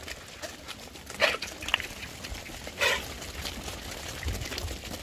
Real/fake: real